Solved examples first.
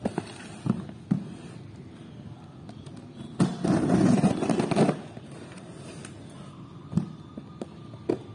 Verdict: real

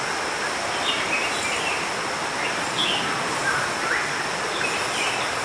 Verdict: real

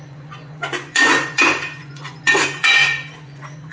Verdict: fake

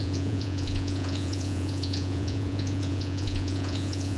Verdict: fake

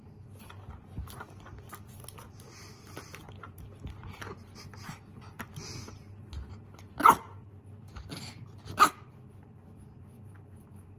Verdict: real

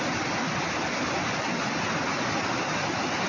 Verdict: real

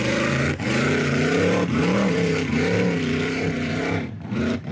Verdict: fake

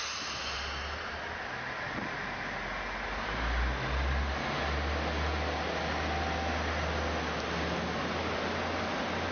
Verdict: real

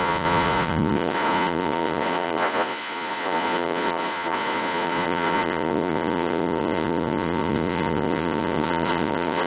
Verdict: fake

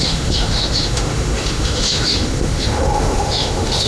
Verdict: fake